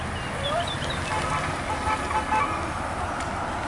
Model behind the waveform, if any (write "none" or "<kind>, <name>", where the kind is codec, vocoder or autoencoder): none